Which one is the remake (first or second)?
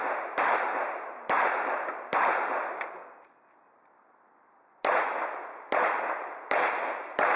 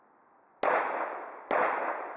first